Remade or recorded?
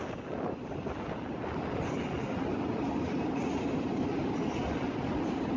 recorded